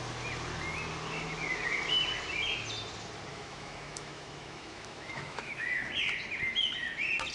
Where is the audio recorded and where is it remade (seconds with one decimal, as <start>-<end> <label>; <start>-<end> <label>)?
0.0-3.3 recorded; 3.3-5.9 remade; 5.9-7.3 recorded